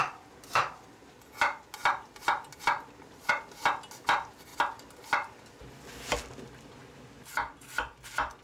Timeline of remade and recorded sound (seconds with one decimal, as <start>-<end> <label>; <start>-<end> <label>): 0.0-8.4 recorded